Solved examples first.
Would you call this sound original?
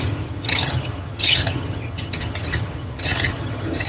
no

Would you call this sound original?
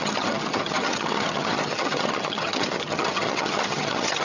no